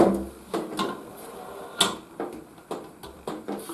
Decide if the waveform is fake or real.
real